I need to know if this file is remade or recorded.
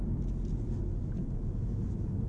recorded